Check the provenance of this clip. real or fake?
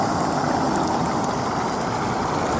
real